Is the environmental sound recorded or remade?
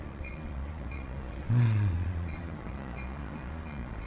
remade